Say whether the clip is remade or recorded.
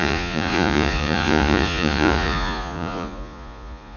remade